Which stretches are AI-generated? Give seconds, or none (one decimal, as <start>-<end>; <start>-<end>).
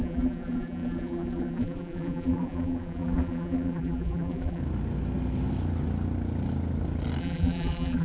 0.0-4.6; 7.2-8.0